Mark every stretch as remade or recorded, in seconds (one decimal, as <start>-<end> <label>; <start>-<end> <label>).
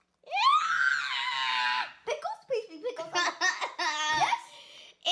0.0-5.1 recorded